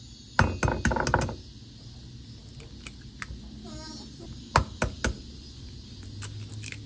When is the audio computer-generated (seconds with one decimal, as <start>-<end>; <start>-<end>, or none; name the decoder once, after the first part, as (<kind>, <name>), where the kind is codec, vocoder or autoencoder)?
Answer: none